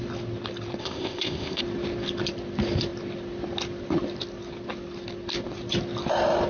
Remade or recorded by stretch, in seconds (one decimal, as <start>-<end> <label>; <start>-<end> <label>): 0.0-0.8 recorded; 0.8-1.6 remade; 1.6-6.5 recorded